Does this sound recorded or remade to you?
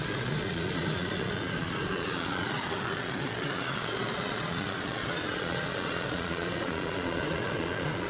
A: remade